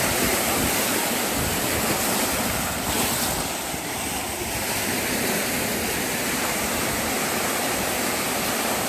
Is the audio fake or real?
fake